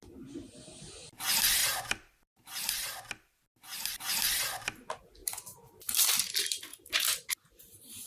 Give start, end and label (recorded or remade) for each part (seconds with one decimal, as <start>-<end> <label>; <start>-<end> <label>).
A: 0.0-1.6 recorded; 1.6-2.8 remade; 2.8-5.2 recorded; 5.2-6.2 remade; 6.2-6.7 recorded; 6.7-7.3 remade; 7.3-8.1 recorded